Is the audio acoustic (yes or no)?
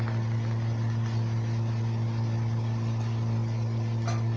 yes